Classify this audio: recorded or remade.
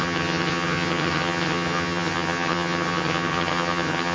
remade